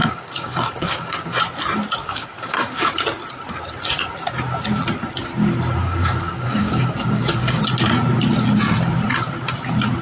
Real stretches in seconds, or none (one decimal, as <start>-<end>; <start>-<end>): 1.4-2.0; 2.9-5.8; 7.6-10.0